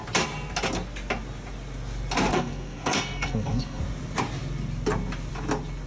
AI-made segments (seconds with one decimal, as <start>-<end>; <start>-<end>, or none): 2.3-3.8